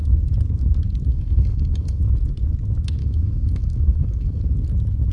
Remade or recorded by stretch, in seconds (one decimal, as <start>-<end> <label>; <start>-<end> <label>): 0.0-1.1 recorded; 1.1-2.0 remade; 2.0-3.0 recorded; 3.0-4.4 remade; 4.4-5.1 recorded